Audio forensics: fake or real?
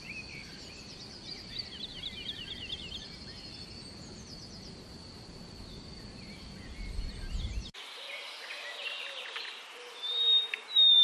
real